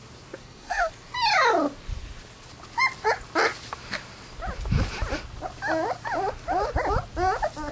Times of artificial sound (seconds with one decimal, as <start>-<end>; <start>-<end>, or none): 0.4-0.9